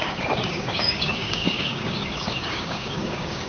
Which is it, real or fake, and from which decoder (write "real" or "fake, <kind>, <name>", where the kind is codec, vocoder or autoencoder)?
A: fake, codec, DAC